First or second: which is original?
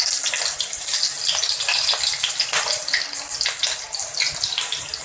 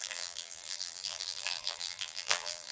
first